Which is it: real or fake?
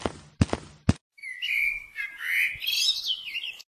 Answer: real